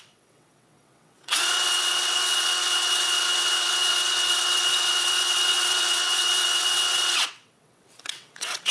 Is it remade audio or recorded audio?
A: remade